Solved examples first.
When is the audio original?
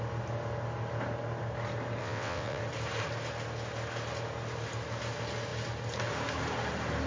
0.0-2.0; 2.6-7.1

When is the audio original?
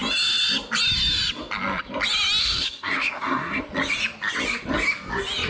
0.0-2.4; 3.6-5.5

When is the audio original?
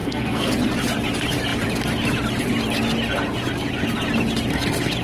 0.5-5.0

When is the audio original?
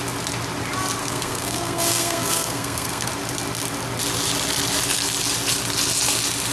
0.0-1.0; 3.1-6.5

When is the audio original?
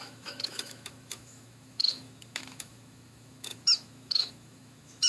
none